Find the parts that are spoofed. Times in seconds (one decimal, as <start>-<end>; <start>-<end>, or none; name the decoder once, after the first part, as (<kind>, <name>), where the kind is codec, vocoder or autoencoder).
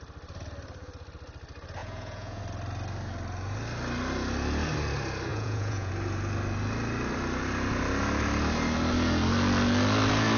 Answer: 1.8-2.4 (vocoder, Vocos); 5.3-5.9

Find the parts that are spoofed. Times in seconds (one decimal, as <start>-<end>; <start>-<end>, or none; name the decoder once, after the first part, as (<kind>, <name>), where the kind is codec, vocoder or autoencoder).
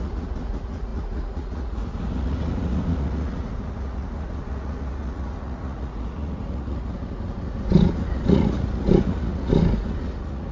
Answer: 0.0-10.5 (vocoder, Vocos)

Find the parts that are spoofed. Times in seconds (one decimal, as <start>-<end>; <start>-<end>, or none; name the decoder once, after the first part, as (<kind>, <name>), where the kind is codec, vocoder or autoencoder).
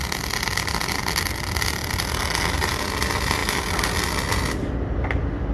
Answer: none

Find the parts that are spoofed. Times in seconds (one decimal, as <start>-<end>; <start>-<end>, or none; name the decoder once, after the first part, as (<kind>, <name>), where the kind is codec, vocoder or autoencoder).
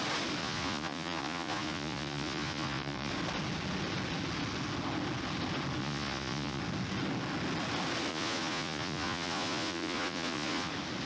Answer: 0.4-3.1 (vocoder, Vocos); 5.8-6.6; 8.1-10.7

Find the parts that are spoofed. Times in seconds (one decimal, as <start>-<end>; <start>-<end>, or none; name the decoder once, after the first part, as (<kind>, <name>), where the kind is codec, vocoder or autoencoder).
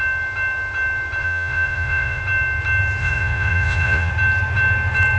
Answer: 1.2-2.2 (vocoder, Vocos); 3.0-4.1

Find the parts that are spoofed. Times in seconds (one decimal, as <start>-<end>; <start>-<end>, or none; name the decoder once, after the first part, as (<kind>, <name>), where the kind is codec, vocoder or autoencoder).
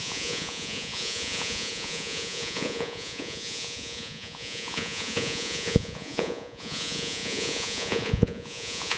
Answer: 0.0-9.0 (vocoder, Vocos)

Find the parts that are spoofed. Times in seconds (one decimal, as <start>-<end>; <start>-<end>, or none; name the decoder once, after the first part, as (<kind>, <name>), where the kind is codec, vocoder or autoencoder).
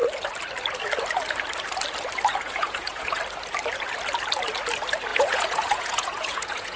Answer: 2.3-3.2 (vocoder, Vocos); 5.1-6.8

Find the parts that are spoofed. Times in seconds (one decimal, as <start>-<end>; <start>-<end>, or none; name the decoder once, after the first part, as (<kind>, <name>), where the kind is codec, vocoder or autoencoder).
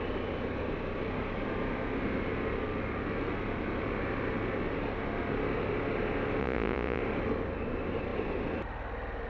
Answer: 6.4-7.0 (vocoder, Vocos)